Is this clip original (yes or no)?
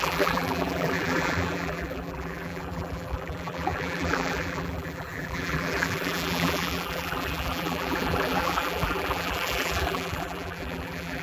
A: no